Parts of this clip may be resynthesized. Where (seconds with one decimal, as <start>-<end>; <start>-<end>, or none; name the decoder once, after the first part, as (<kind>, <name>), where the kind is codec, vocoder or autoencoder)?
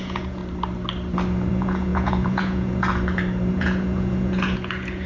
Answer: 0.0-0.4 (vocoder, Vocos); 1.5-2.9; 3.5-5.1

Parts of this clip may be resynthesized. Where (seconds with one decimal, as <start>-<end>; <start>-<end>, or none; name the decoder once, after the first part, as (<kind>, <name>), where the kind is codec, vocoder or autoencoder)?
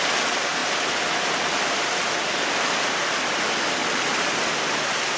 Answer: 0.0-0.6 (vocoder, BigVGAN v2); 1.2-5.2